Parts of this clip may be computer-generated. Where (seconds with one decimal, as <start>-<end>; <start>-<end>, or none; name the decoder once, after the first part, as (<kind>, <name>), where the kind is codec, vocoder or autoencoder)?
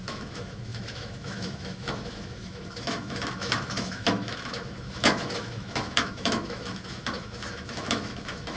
0.0-8.6 (autoencoder, DAC-VAE)